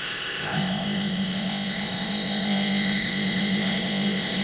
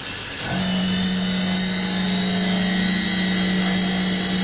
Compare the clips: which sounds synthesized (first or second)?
first